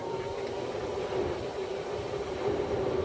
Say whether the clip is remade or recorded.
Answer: remade